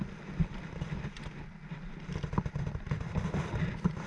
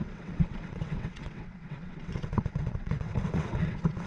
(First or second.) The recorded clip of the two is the first